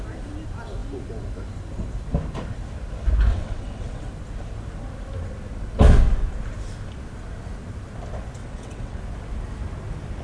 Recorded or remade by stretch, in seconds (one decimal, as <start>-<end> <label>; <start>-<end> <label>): 0.0-3.3 recorded; 3.3-4.1 remade; 4.1-8.4 recorded; 8.4-9.0 remade; 9.0-10.2 recorded

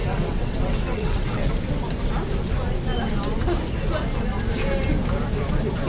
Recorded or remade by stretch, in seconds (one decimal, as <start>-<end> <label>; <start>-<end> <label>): 0.0-1.5 remade; 1.5-5.9 recorded